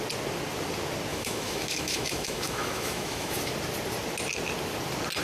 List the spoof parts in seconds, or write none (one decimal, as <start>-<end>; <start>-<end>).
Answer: 1.1-3.5

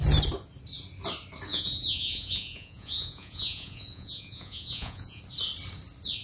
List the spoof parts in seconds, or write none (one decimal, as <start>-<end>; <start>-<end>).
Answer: 1.5-5.2

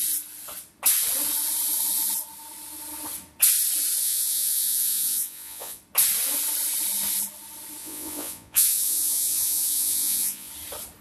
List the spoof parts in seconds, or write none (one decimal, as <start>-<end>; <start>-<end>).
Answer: 4.0-5.8; 7.8-10.5

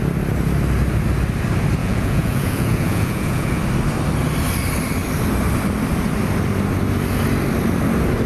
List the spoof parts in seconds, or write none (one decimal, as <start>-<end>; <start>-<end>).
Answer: 1.8-3.6